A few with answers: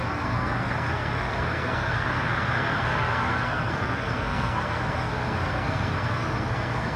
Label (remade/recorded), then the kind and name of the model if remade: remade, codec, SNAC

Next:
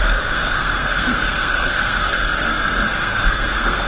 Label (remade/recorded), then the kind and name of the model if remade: remade, codec, SNAC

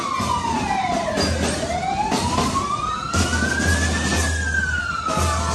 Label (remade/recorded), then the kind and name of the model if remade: recorded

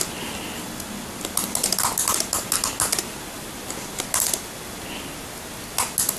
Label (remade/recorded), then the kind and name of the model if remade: recorded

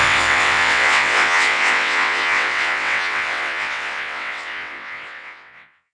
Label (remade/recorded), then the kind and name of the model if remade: remade, vocoder, WaveNeXt